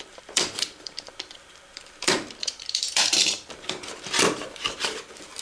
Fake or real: fake